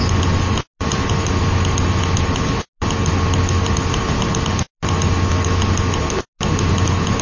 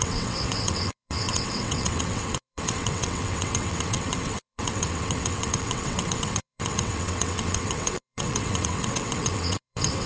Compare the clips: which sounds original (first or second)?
first